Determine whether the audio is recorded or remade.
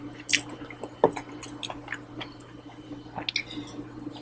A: recorded